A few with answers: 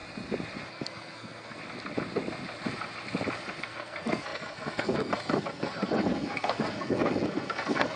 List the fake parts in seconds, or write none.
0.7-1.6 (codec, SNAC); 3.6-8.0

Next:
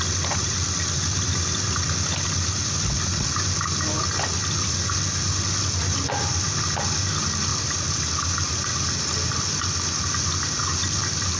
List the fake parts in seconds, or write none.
none

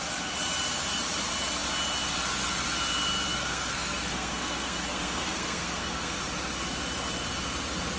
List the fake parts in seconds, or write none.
3.3-6.2 (codec, SNAC)

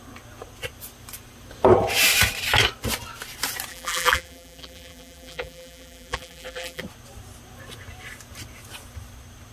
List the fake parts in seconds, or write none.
3.7-6.8 (vocoder, BigVGAN v2)

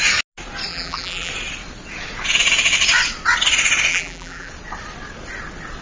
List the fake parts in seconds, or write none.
0.7-1.3 (vocoder, BigVGAN v2); 3.9-4.5